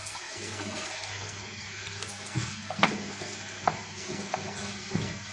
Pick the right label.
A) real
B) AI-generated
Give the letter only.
B